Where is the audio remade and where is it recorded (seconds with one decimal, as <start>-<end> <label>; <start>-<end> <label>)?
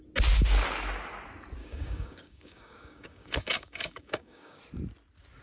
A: 0.0-1.6 recorded; 1.6-4.6 remade; 4.6-5.4 recorded